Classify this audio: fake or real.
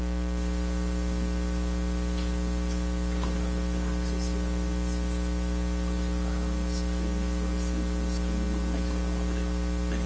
real